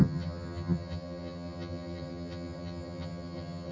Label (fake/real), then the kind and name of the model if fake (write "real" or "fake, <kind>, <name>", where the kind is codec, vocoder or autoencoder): fake, vocoder, HiFi-GAN